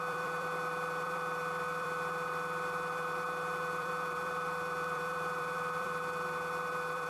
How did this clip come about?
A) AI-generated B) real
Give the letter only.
A